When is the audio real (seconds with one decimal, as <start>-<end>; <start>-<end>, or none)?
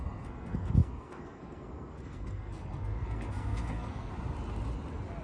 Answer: 4.1-5.2